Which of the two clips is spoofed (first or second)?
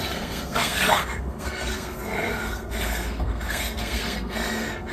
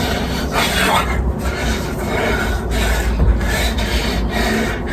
first